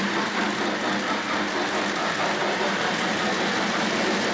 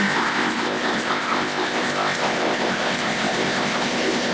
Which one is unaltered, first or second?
first